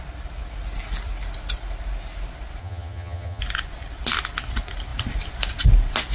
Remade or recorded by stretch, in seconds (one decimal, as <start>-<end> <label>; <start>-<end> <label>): 0.0-2.6 recorded; 2.6-3.4 remade; 3.4-6.1 recorded